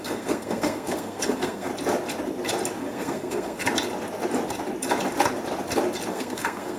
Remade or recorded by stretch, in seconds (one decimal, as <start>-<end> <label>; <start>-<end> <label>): 0.0-1.7 remade; 1.7-2.8 recorded; 2.8-3.6 remade; 3.6-6.1 recorded; 6.1-6.8 remade